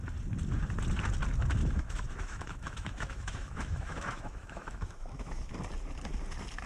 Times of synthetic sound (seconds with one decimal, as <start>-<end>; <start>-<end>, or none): 1.6-5.5